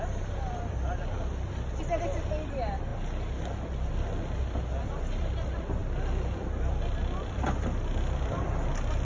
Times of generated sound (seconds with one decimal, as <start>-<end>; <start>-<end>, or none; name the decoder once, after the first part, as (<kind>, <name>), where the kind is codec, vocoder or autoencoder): none